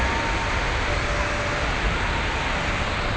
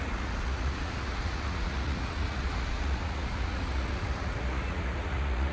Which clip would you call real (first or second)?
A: first